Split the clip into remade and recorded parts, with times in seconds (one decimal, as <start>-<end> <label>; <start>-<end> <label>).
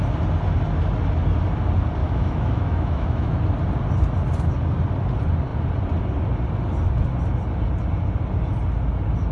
0.0-2.0 recorded; 2.0-3.4 remade; 3.4-9.3 recorded